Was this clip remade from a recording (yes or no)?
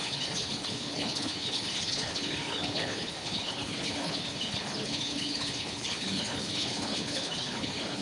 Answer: yes